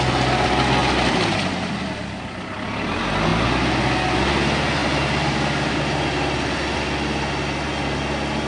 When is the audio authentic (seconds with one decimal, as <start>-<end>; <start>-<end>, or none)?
0.0-4.8; 5.8-8.5